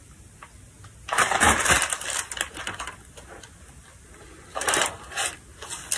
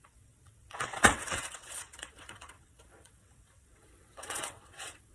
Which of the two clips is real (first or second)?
first